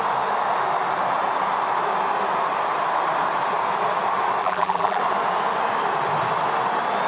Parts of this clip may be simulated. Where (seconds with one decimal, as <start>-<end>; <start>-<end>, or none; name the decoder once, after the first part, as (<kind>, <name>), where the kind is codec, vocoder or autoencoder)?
4.4-5.0 (vocoder, BigVGAN v2)